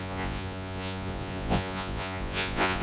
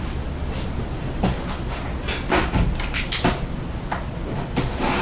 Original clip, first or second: second